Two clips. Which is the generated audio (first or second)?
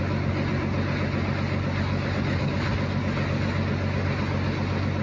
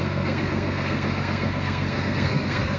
second